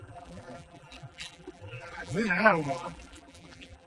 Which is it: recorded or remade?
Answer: remade